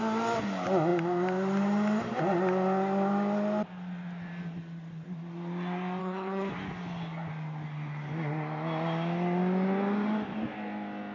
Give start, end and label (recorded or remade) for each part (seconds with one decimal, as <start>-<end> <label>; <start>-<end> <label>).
0.0-6.0 recorded; 6.0-6.5 remade; 6.5-11.1 recorded

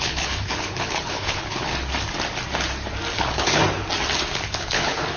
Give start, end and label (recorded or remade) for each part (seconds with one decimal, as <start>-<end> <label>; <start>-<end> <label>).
0.0-1.7 remade; 1.7-3.1 recorded; 3.1-3.6 remade; 3.6-4.3 recorded; 4.3-5.2 remade

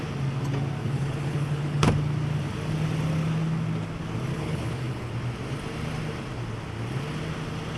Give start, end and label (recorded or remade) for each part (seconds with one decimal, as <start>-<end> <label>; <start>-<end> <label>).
0.0-0.8 recorded; 0.8-1.9 remade; 1.9-4.3 recorded; 4.3-5.1 remade; 5.1-7.8 recorded

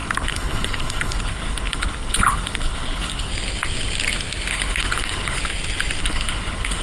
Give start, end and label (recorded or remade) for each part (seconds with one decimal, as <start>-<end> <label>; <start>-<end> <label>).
0.0-3.3 remade; 3.3-4.5 recorded; 4.5-5.4 remade; 5.4-6.0 recorded; 6.0-6.8 remade